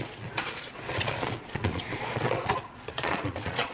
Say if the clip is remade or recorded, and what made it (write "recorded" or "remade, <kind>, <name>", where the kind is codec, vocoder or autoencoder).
remade, vocoder, Vocos